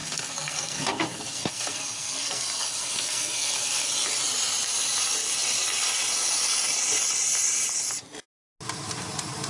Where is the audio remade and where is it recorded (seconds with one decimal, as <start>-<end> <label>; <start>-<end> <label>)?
0.0-3.9 remade; 3.9-9.5 recorded

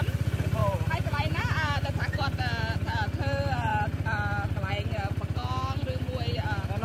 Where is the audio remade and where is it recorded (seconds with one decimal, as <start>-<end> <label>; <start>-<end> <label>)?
0.0-6.8 recorded